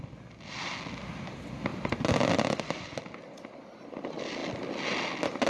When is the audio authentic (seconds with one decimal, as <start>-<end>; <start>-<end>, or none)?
0.0-5.5